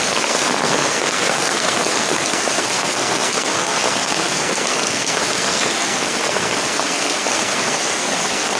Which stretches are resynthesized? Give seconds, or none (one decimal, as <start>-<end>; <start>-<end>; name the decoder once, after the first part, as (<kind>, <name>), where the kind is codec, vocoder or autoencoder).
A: 0.0-8.6 (codec, SNAC)